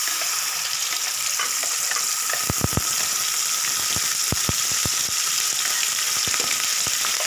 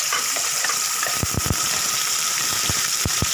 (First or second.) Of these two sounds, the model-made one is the second